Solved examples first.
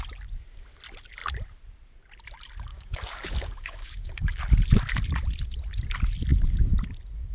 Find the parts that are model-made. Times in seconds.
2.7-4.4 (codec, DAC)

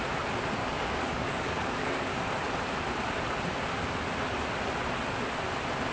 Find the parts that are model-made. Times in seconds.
0.6-2.2 (codec, DAC)